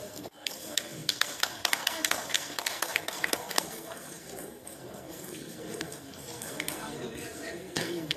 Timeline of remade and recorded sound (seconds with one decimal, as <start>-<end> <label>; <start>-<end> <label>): 0.0-8.2 remade